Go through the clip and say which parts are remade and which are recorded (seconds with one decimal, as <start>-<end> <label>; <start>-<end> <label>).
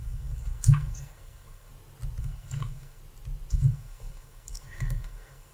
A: 0.0-1.7 remade; 1.7-2.2 recorded; 2.2-3.0 remade; 3.0-3.5 recorded; 3.5-5.5 remade